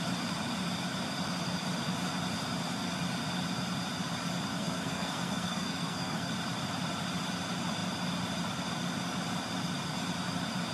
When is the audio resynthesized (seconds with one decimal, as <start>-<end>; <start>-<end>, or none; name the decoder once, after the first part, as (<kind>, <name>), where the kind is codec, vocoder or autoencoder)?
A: 4.5-6.3 (codec, SNAC)

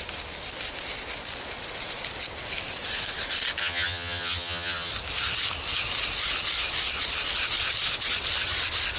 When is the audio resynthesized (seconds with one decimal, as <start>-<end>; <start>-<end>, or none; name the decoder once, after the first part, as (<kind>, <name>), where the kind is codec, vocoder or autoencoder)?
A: 3.6-4.9 (vocoder, HiFi-GAN)

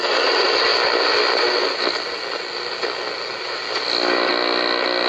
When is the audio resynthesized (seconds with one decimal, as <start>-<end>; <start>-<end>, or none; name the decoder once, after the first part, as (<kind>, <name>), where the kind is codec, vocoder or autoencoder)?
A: none

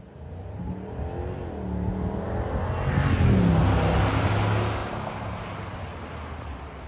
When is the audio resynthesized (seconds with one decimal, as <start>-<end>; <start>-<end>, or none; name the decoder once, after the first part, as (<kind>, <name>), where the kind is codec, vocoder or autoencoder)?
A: none

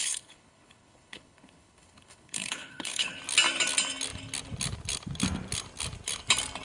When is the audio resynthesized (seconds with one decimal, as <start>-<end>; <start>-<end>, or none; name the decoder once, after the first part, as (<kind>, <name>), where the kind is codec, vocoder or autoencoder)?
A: 0.0-3.2 (codec, HILCodec)

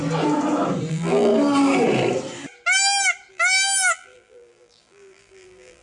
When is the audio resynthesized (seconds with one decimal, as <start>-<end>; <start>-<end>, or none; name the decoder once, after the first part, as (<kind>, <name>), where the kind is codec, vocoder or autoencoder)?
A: 0.9-1.3 (vocoder, BigVGAN v2); 3.3-5.8

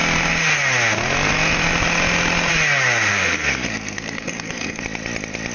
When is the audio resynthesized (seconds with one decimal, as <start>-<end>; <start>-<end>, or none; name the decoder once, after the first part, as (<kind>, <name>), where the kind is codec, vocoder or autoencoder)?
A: 3.1-4.8 (codec, SNAC)

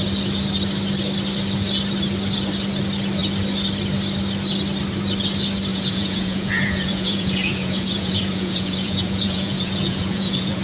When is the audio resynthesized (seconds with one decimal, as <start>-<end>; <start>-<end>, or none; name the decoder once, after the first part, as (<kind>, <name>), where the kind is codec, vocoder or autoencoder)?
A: 5.7-10.6 (vocoder, Vocos)